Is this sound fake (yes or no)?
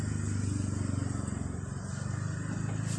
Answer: no